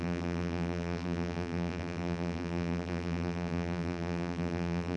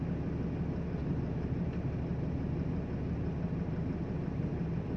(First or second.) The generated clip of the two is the first